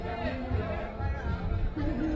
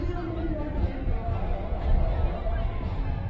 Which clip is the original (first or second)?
first